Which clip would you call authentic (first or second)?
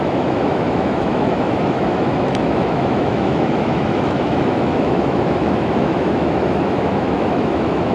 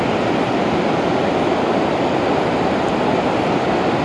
second